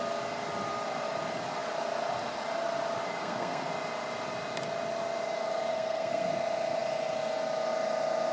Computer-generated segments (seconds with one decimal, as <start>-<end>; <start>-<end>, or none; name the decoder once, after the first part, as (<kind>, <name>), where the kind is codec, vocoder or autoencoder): 3.2-3.7 (codec, SNAC); 5.7-6.3